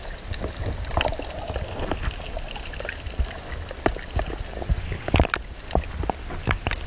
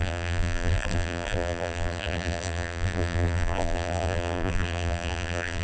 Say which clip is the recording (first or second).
first